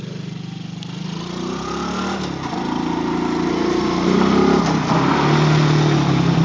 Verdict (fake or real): real